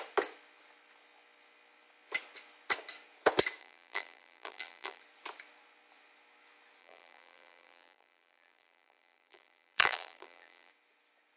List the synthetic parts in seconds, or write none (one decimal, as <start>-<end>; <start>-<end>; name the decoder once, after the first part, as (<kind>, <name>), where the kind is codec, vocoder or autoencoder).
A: 3.6-5.0 (vocoder, BigVGAN v2); 6.8-10.7